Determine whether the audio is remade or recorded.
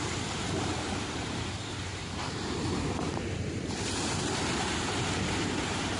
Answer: remade